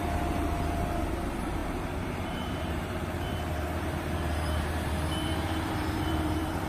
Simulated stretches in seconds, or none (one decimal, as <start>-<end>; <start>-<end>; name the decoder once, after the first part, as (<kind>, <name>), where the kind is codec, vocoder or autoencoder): 0.0-6.7 (vocoder, BigVGAN v2)